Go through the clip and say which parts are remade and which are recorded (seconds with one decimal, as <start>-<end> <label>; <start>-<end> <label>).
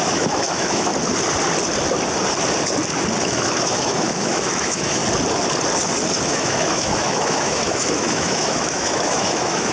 0.0-0.9 remade; 0.9-3.2 recorded; 3.2-5.0 remade; 5.0-6.2 recorded; 6.2-9.7 remade